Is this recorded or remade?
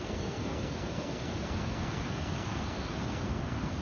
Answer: remade